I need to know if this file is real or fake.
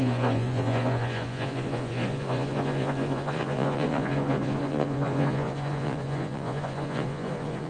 fake